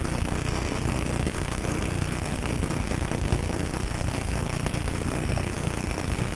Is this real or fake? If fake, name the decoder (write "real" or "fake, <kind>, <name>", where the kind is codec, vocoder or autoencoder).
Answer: fake, codec, SNAC